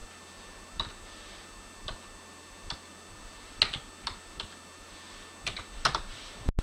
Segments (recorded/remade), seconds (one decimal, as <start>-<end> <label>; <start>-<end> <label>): 0.0-6.6 recorded